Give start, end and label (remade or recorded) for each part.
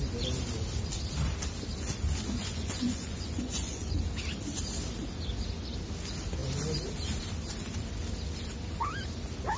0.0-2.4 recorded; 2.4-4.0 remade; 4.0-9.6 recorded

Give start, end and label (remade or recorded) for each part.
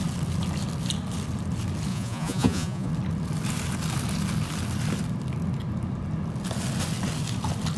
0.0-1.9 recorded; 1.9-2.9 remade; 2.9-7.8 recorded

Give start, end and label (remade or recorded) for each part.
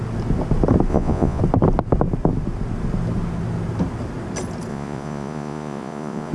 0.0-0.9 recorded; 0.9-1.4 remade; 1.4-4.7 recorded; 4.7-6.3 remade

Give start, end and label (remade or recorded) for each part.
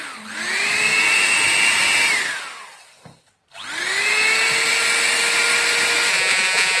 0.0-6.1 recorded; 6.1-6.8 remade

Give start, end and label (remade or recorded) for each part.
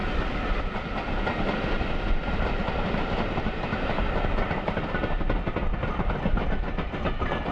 0.0-7.5 recorded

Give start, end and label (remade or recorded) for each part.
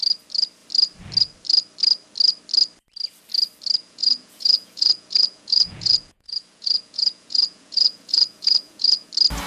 0.0-3.8 recorded; 3.8-9.1 remade; 9.1-9.5 recorded